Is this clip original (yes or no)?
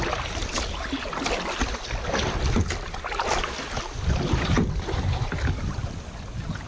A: yes